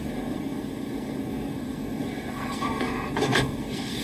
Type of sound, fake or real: fake